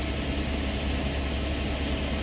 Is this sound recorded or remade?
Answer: recorded